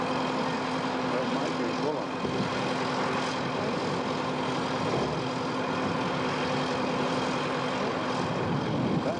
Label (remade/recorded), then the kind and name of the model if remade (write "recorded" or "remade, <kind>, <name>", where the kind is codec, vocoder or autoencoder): recorded